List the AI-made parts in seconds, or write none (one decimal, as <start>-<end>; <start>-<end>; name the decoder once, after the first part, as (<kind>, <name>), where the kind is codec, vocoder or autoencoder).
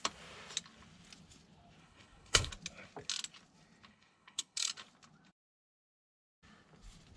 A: 1.8-2.5 (codec, HILCodec); 3.9-4.7